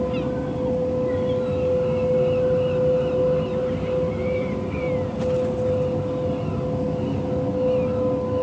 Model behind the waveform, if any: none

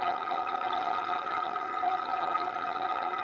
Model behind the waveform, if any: vocoder, HiFi-GAN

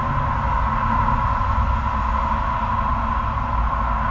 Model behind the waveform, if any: none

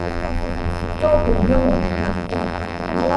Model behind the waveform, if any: vocoder, BigVGAN v2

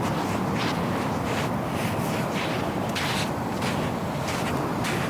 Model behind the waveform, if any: none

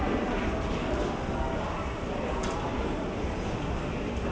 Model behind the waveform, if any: none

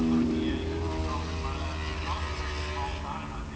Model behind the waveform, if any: none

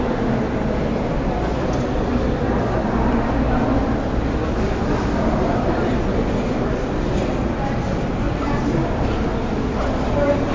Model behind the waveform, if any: none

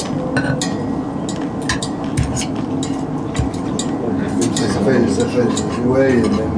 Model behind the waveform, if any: none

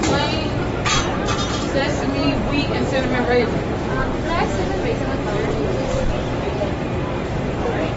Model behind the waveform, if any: vocoder, BigVGAN v2